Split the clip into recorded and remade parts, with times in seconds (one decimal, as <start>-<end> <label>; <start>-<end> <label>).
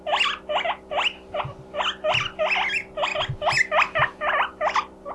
0.0-5.1 recorded